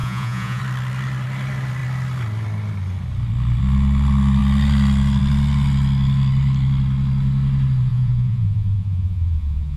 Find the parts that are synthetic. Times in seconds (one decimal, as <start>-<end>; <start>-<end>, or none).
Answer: 0.0-0.6; 7.9-9.8